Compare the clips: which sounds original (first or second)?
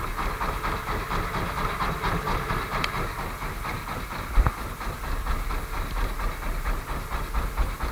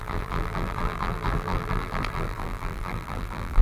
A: first